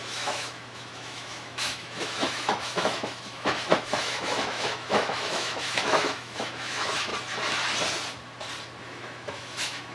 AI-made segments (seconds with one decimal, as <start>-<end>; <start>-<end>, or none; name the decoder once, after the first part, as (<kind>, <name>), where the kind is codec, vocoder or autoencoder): 0.0-7.1 (autoencoder, DAC-VAE); 8.8-9.9